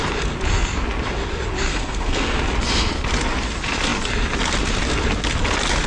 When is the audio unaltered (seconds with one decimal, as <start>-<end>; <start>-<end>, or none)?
0.0-1.7; 2.4-5.9